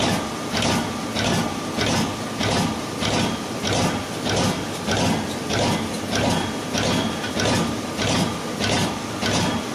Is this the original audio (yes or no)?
yes